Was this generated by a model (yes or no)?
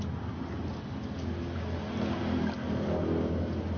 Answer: no